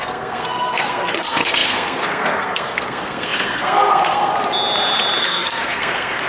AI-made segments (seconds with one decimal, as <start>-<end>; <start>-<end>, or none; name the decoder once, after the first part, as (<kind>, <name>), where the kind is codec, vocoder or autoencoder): 0.0-4.3 (codec, SNAC); 5.2-6.3